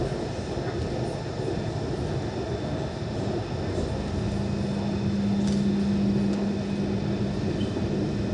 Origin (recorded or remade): recorded